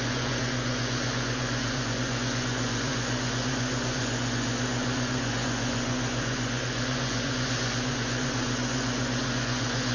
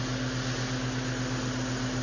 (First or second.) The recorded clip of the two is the second